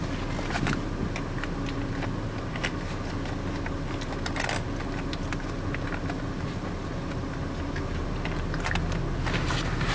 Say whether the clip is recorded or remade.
recorded